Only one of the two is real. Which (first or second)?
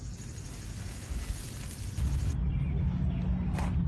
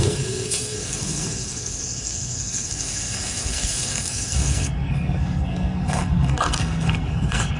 first